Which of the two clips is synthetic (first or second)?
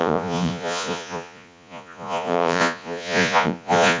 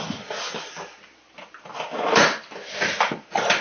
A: first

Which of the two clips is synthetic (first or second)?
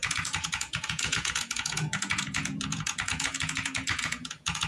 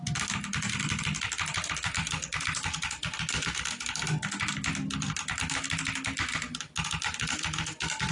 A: first